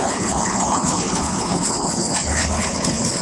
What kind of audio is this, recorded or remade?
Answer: remade